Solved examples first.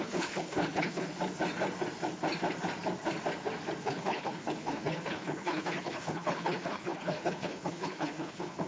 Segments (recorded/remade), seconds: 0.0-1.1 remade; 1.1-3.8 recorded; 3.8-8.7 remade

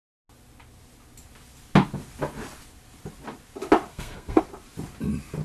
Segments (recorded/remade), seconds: 0.0-3.9 recorded; 3.9-4.4 remade; 4.4-5.4 recorded

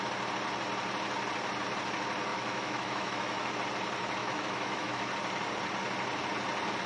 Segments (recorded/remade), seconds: 0.0-2.3 recorded; 2.3-3.5 remade; 3.5-4.2 recorded; 4.2-5.1 remade; 5.1-6.9 recorded

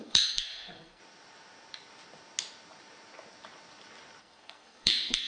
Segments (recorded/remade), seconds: 0.0-1.0 remade; 1.0-4.2 recorded; 4.2-5.3 remade

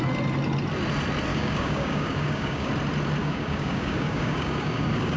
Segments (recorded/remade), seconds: 0.0-1.3 recorded; 1.3-2.7 remade; 2.7-3.2 recorded; 3.2-5.2 remade